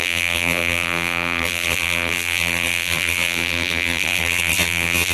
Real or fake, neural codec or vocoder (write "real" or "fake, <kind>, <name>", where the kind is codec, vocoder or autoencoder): fake, vocoder, BigVGAN v2